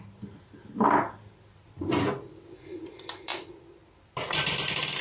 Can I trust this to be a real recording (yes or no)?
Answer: yes